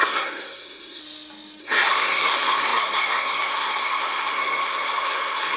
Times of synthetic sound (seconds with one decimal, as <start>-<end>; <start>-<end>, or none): 0.0-1.0; 1.6-5.6